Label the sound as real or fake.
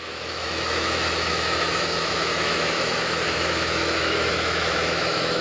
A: fake